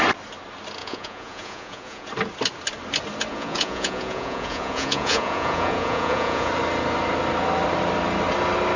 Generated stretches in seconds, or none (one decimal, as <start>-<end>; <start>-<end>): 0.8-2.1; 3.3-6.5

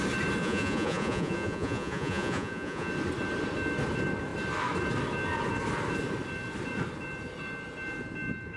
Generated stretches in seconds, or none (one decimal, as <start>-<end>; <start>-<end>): 0.4-2.9

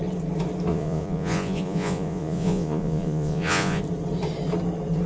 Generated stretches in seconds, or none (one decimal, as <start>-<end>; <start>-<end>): 0.7-3.8

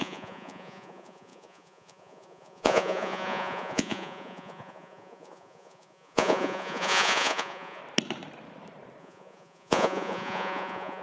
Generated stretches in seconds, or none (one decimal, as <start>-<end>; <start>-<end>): 0.0-7.8; 9.0-11.0

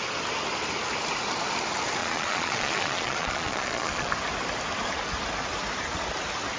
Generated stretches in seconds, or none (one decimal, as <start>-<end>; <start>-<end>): 2.0-4.1

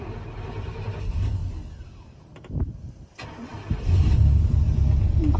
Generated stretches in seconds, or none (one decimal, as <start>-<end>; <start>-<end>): none

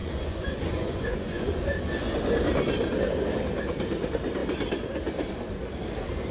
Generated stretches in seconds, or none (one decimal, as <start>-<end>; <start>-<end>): 0.0-1.6

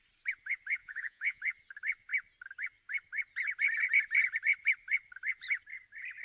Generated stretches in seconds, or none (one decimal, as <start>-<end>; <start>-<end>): 0.8-1.4